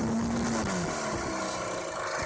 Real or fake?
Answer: real